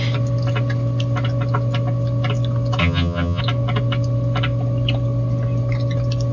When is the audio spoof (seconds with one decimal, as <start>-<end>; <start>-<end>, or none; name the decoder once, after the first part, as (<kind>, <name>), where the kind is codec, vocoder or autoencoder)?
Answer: 2.8-3.4 (vocoder, HiFi-GAN)